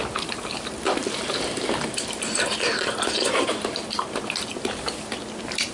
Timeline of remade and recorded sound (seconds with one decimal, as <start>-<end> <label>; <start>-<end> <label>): 0.0-5.7 recorded